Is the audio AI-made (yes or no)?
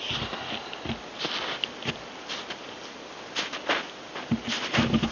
no